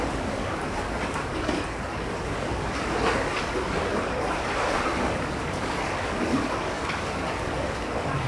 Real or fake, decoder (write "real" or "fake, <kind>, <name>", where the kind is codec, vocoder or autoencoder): fake, codec, DAC